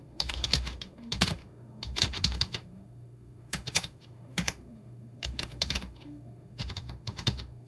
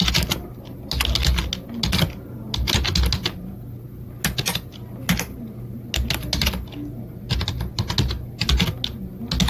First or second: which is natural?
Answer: second